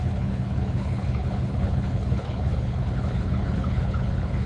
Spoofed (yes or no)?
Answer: yes